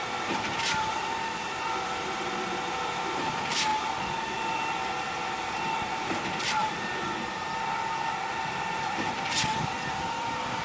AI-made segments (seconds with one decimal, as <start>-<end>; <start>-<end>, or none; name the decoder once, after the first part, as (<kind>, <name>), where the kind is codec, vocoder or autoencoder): 0.0-3.7 (vocoder, BigVGAN v2); 5.4-10.6